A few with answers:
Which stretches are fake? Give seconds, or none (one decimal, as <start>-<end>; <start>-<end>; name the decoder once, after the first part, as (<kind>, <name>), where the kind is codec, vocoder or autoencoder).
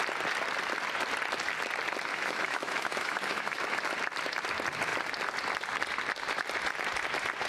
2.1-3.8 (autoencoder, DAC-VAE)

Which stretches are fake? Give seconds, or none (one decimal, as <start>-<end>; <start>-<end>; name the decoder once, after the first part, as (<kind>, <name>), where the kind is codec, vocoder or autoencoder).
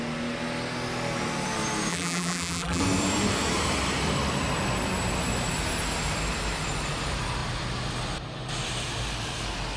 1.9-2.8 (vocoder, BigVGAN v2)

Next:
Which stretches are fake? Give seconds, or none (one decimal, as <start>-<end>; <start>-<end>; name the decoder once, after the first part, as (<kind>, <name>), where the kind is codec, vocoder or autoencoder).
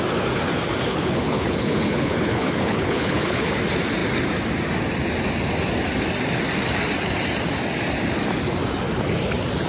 0.9-3.5 (codec, HILCodec)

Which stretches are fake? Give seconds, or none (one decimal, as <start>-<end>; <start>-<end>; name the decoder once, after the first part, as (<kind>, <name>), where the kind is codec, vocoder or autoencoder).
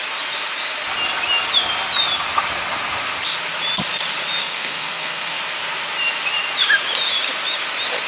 4.4-5.4 (codec, SNAC)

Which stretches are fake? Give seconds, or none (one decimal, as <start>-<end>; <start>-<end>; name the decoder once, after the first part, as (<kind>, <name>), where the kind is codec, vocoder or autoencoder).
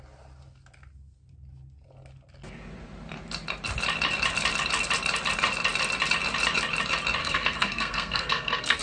7.2-8.8 (codec, SNAC)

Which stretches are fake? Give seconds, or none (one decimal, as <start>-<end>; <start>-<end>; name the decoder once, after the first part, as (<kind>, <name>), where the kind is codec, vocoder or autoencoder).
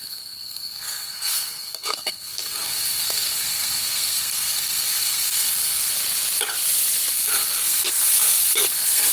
0.0-5.9 (codec, SNAC); 7.1-9.1